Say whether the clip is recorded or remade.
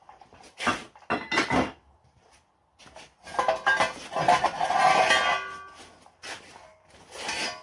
recorded